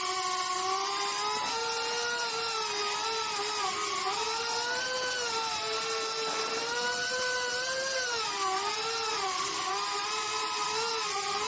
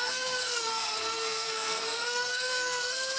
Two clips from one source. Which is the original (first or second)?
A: first